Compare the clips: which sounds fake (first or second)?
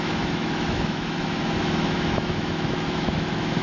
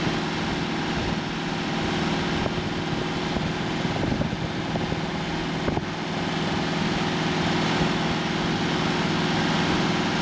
first